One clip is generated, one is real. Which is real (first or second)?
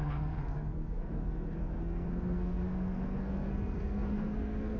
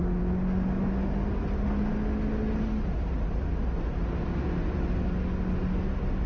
second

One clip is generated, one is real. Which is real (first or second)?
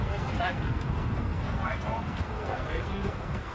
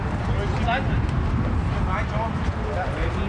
second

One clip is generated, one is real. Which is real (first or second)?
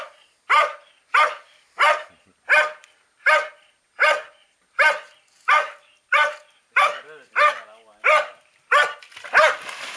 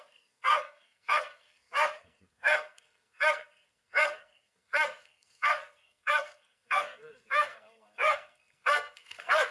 first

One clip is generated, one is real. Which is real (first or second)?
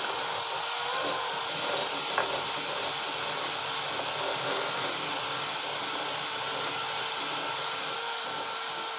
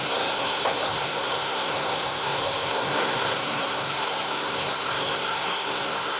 first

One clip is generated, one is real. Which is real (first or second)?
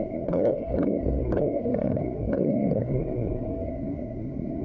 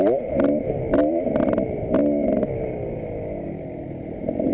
second